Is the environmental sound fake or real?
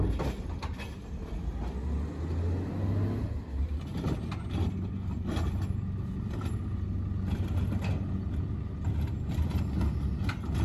real